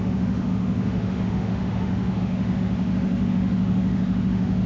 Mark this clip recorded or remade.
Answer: remade